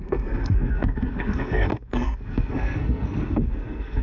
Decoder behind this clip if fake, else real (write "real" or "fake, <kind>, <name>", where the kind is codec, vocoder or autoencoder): fake, codec, SNAC